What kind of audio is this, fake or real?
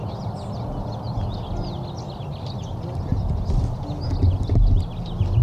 real